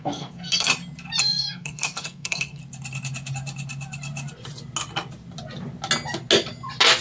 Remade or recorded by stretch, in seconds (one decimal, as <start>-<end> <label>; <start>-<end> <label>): 0.0-0.7 remade; 0.7-1.2 recorded; 1.2-2.6 remade; 2.6-7.0 recorded